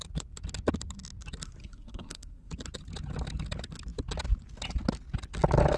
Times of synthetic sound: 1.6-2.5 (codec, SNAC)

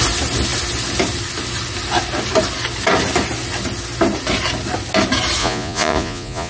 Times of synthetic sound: 5.4-6.5 (vocoder, Vocos)

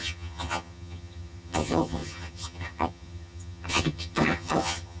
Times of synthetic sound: 0.0-5.0 (vocoder, HiFi-GAN)